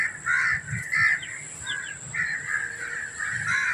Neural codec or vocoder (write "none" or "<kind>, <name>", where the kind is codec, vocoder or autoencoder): none